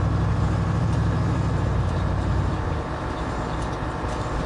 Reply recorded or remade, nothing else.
remade